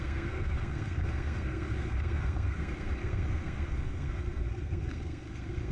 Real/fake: fake